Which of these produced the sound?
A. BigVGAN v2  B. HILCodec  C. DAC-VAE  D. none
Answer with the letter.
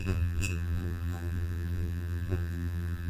A